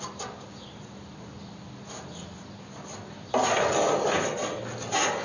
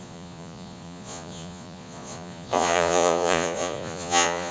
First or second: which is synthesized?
second